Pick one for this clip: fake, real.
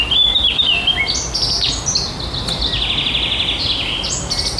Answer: real